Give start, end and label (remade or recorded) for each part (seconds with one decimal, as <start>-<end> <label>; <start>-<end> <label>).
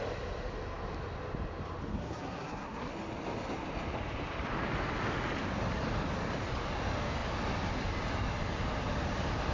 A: 0.0-1.9 recorded; 1.9-2.9 remade; 2.9-9.5 recorded